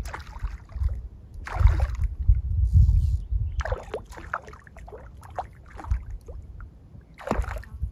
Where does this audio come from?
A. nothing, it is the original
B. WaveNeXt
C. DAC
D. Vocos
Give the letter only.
A